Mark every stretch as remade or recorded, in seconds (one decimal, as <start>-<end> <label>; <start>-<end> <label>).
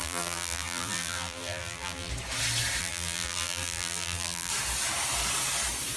0.0-2.1 remade; 2.1-2.8 recorded; 2.8-4.5 remade; 4.5-6.0 recorded